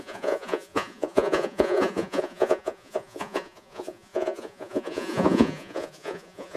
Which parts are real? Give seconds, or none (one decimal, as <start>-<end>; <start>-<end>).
none